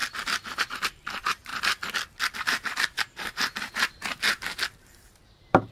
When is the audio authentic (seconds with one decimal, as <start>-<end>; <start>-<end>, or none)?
0.0-0.6; 1.5-2.4